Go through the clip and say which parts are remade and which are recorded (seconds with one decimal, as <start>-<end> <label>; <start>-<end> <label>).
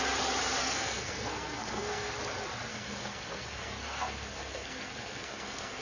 0.0-0.6 recorded; 0.6-2.1 remade; 2.1-2.7 recorded; 2.7-5.8 remade